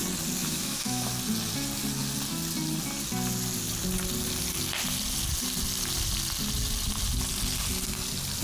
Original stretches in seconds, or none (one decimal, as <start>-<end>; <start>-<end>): 0.0-0.4; 1.1-8.4